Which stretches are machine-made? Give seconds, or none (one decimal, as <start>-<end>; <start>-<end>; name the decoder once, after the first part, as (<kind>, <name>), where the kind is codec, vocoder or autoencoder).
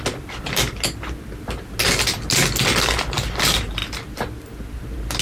none